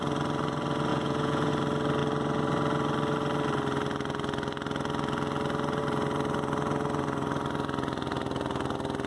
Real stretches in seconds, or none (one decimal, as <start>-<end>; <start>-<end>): 0.0-0.9; 1.5-9.1